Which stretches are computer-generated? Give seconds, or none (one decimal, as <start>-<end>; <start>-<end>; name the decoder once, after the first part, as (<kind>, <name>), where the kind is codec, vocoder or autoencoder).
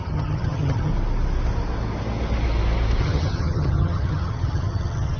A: 0.0-0.9 (vocoder, HiFi-GAN); 3.0-5.2